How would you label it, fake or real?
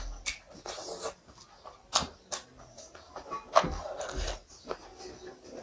real